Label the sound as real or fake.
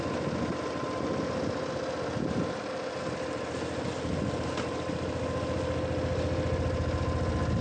real